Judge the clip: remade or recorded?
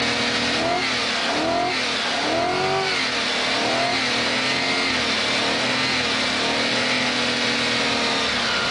recorded